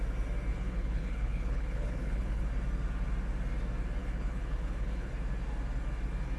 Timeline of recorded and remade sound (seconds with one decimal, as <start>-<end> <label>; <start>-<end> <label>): 0.0-0.5 recorded; 0.5-2.4 remade; 2.4-4.0 recorded; 4.0-5.1 remade; 5.1-6.4 recorded